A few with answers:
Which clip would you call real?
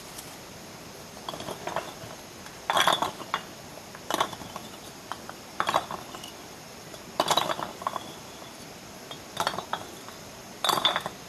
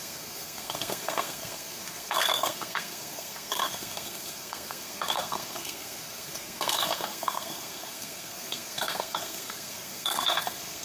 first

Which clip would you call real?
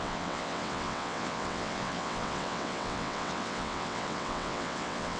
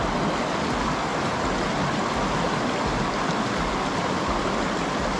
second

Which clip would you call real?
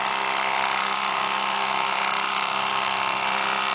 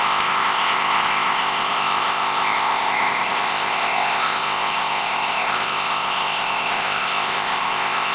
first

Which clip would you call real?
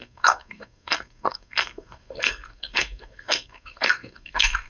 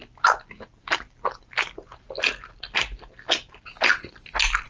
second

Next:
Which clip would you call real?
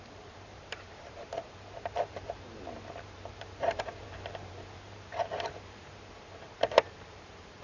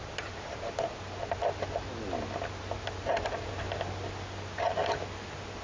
second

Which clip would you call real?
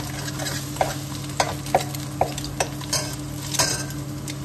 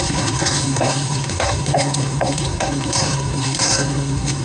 first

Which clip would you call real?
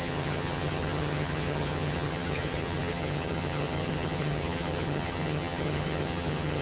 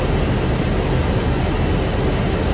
second